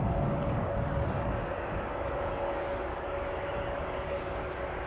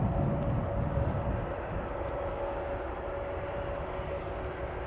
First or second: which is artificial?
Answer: first